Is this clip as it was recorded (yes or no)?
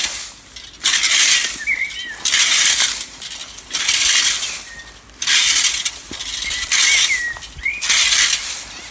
yes